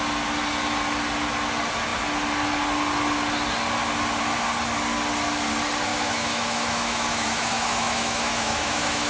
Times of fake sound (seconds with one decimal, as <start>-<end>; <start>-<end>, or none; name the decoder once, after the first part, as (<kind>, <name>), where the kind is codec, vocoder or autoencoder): 5.9-9.1 (autoencoder, DAC-VAE)